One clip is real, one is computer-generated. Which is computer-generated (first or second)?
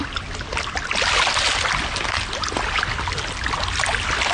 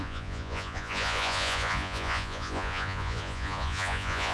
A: second